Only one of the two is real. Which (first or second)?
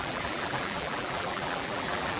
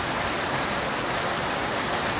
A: second